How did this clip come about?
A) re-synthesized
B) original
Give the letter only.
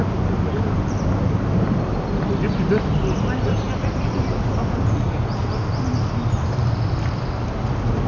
B